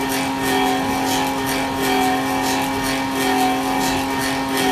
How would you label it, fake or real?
real